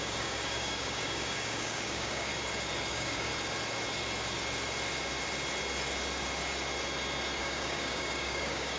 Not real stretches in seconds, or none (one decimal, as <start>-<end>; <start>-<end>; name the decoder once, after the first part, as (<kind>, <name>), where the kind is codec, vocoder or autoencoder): 0.0-2.3 (codec, DAC); 2.9-3.3; 7.4-8.8